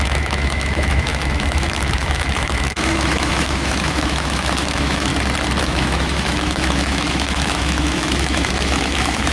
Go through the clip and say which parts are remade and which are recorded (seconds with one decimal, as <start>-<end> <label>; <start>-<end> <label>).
0.0-5.1 remade; 5.1-5.6 recorded; 5.6-9.3 remade